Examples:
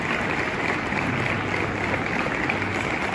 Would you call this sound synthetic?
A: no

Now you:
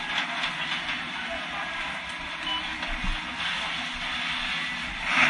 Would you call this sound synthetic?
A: no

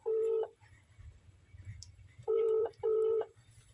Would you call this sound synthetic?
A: yes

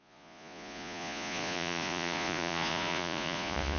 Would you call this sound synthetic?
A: yes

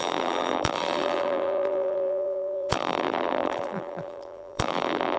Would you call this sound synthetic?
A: yes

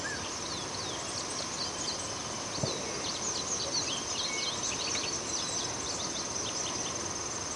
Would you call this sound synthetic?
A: no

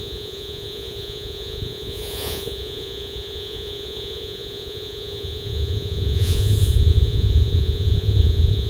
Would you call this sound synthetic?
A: yes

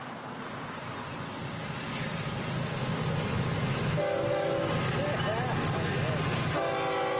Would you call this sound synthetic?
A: no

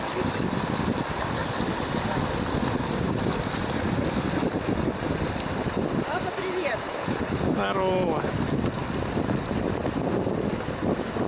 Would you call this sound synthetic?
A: no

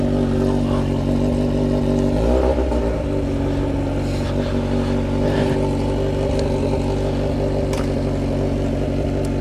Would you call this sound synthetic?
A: no